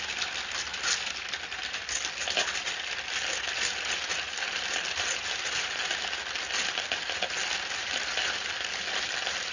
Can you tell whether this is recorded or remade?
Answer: recorded